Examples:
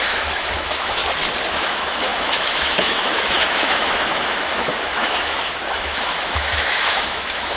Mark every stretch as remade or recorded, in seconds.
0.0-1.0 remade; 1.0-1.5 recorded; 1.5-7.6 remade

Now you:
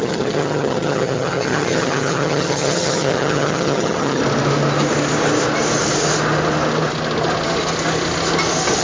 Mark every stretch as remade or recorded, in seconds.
0.0-4.2 remade; 4.2-8.8 recorded

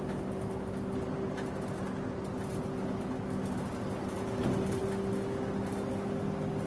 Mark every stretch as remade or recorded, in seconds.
0.0-6.7 recorded

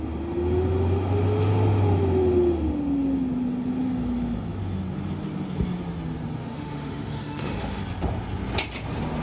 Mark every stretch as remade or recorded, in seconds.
0.0-6.4 recorded; 6.4-7.8 remade; 7.8-9.2 recorded

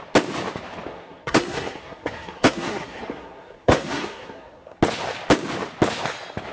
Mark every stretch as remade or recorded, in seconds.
0.0-0.9 recorded; 0.9-4.8 remade; 4.8-6.5 recorded

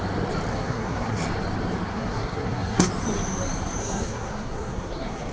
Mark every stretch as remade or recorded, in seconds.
0.0-0.5 recorded; 0.5-1.2 remade; 1.2-1.9 recorded; 1.9-2.9 remade; 2.9-3.8 recorded; 3.8-5.3 remade

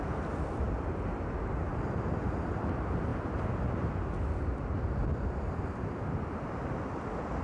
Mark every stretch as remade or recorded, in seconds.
0.0-7.4 recorded

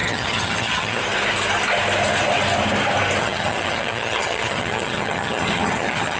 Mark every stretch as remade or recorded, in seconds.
0.0-1.0 remade; 1.0-3.2 recorded; 3.2-6.2 remade